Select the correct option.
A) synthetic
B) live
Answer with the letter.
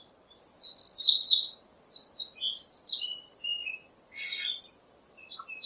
B